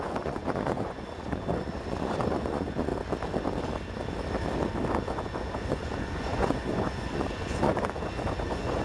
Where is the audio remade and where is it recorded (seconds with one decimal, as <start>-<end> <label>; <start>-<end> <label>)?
0.0-2.9 remade; 2.9-5.0 recorded; 5.0-8.8 remade